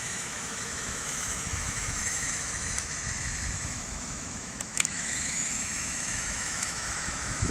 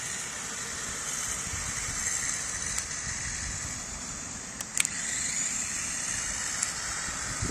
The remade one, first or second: first